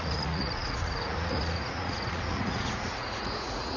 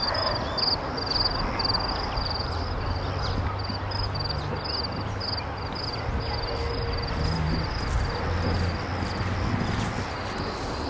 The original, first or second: second